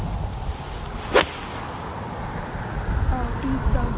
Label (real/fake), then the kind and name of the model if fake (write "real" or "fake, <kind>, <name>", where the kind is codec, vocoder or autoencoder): real